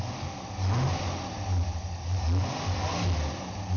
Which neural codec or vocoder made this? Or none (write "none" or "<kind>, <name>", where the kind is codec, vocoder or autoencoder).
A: none